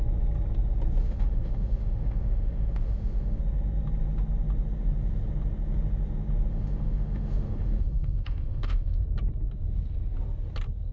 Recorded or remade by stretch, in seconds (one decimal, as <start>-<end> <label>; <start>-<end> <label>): 0.0-1.0 recorded; 1.0-3.4 remade; 3.4-6.5 recorded; 6.5-9.0 remade; 9.0-10.9 recorded